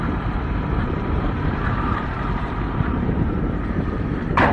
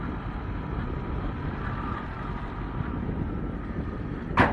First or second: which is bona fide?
second